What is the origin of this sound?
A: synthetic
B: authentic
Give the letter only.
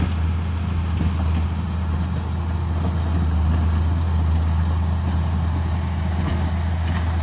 B